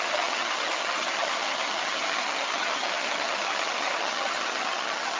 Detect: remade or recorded remade